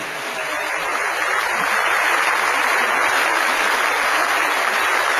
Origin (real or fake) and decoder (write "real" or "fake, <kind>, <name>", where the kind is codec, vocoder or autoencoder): real